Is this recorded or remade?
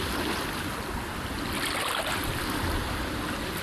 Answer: recorded